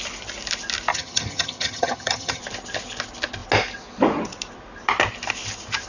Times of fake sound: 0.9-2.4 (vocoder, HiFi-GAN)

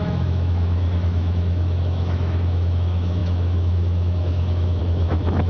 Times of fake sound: 0.0-5.5 (autoencoder, DAC-VAE)

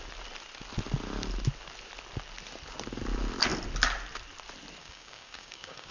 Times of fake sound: 4.8-5.9 (codec, DAC)

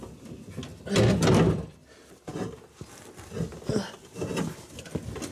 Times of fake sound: none

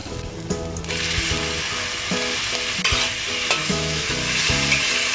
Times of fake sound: 3.6-4.1 (autoencoder, DAC-VAE)